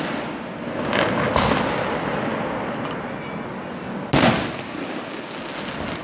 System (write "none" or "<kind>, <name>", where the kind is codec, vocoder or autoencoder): none